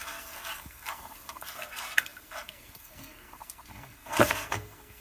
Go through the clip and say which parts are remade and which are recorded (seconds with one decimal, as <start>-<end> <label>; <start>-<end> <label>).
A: 0.0-5.0 remade